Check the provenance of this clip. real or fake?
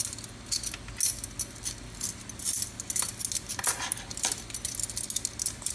real